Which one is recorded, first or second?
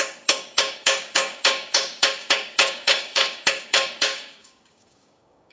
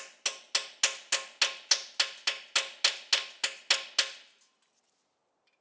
second